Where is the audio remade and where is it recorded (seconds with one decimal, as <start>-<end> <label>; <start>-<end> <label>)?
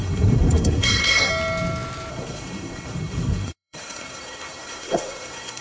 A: 0.0-1.3 remade; 1.3-2.1 recorded; 2.1-5.6 remade